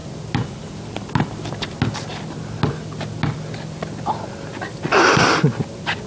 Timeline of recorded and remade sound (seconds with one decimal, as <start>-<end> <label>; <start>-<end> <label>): 0.0-6.1 recorded